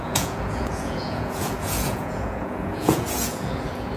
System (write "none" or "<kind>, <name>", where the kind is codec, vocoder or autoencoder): vocoder, Vocos